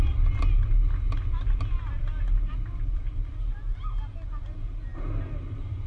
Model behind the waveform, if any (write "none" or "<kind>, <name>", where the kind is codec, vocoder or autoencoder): none